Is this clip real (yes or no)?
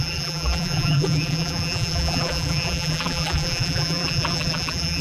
no